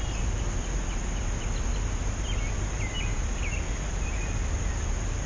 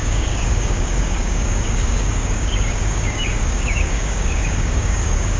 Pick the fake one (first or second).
second